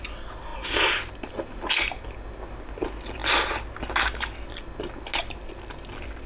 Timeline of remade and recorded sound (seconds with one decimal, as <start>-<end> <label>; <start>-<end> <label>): 0.0-6.3 recorded